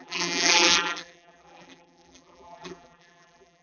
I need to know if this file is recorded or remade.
remade